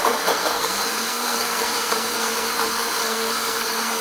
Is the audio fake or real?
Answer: fake